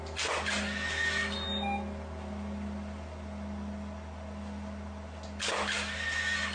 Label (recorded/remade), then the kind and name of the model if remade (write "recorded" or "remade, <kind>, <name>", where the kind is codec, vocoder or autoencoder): recorded